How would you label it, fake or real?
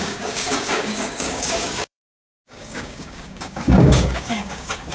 fake